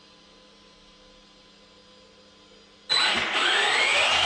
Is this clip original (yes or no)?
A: yes